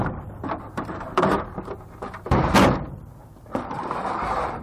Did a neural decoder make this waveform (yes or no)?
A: yes